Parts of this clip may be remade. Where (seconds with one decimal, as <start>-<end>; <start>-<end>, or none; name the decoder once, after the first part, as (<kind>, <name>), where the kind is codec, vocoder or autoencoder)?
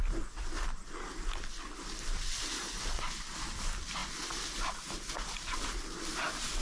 none